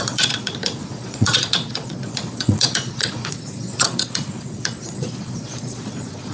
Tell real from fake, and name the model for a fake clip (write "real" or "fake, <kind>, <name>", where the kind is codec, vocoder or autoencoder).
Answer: fake, vocoder, Vocos